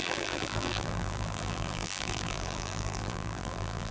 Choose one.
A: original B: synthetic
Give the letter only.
B